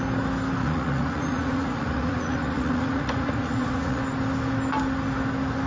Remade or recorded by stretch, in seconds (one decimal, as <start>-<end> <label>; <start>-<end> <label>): 0.0-0.6 recorded; 0.6-4.0 remade; 4.0-5.7 recorded